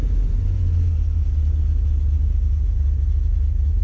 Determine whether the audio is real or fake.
real